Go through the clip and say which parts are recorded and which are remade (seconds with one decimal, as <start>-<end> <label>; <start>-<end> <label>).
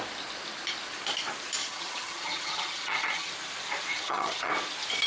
0.0-1.6 recorded; 1.6-3.3 remade; 3.3-3.9 recorded; 3.9-4.5 remade; 4.5-5.1 recorded